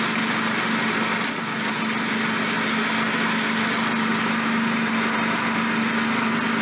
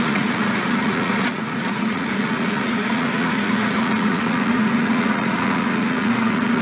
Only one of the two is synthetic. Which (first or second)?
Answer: second